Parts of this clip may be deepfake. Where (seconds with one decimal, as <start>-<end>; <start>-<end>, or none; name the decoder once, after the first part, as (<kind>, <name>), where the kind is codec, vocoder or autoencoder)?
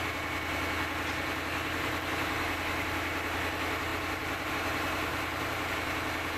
3.9-4.5 (vocoder, BigVGAN v2); 5.1-5.7